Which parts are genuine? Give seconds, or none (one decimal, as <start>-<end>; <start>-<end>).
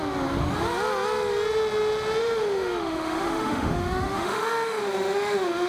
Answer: 0.0-2.2